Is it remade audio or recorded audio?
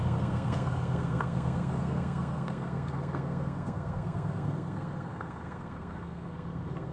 remade